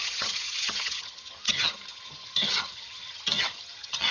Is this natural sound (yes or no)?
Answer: no